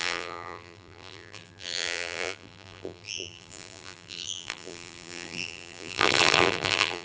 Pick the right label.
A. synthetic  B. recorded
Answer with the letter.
A